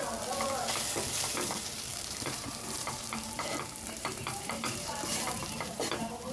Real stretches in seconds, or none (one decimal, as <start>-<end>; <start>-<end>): 0.0-1.1